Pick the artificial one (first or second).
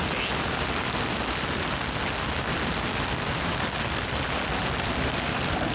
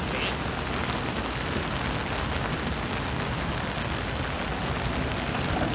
first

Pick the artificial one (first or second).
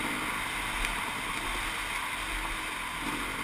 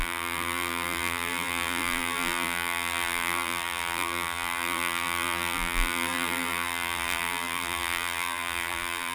second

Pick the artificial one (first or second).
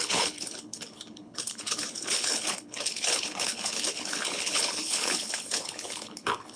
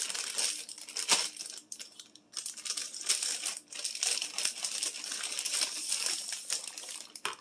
first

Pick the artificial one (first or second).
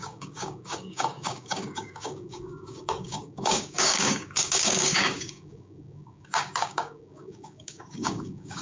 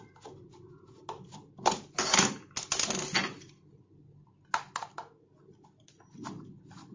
first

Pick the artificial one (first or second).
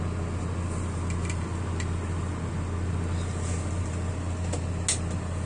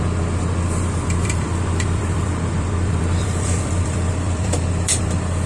second